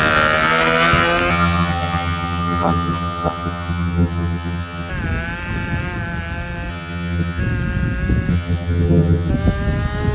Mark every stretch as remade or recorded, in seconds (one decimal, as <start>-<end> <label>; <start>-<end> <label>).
0.0-1.3 recorded; 1.3-4.9 remade; 4.9-6.7 recorded; 6.7-7.4 remade; 7.4-8.3 recorded; 8.3-9.3 remade; 9.3-10.1 recorded